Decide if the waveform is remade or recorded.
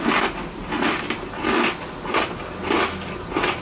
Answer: recorded